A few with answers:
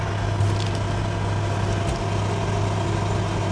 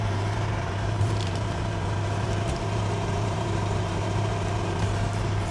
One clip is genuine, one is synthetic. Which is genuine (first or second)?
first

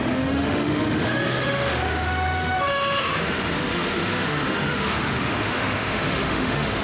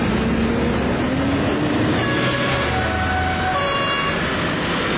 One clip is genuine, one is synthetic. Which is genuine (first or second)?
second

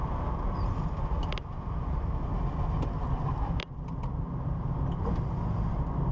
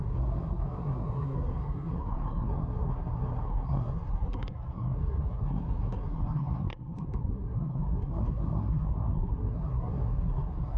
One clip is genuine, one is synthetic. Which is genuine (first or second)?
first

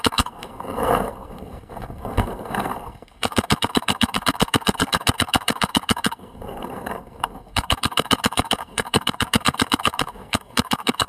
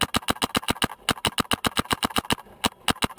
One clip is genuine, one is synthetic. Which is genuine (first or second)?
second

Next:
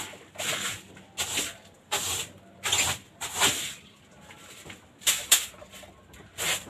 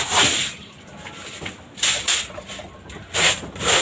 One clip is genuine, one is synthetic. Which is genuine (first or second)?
first